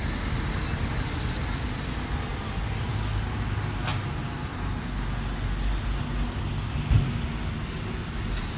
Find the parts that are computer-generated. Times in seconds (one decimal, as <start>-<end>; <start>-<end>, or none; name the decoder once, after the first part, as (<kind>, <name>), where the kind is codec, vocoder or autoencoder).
none